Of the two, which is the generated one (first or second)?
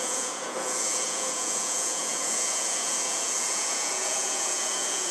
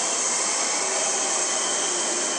first